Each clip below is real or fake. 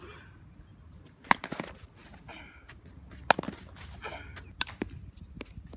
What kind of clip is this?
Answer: real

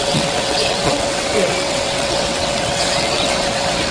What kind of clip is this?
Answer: fake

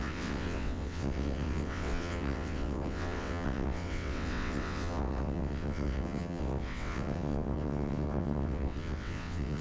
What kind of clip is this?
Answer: fake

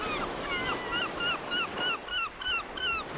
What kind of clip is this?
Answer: real